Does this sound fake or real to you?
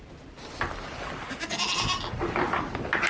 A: real